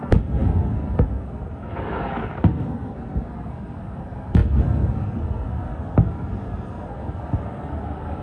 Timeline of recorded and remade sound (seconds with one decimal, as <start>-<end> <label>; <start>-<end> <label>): 0.0-8.2 remade